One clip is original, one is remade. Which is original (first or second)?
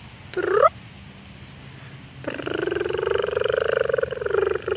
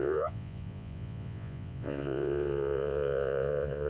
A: first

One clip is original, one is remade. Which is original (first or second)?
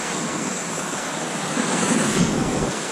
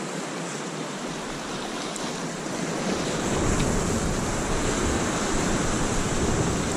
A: second